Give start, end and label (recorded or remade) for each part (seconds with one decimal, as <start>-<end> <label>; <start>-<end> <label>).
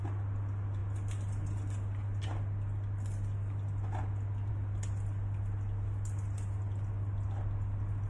0.0-8.1 recorded